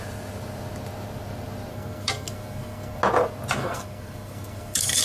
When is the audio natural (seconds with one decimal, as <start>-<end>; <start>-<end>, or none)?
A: 0.0-1.7; 3.0-3.6

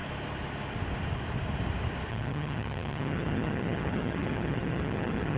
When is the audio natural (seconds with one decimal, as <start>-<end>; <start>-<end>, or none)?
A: 0.0-2.1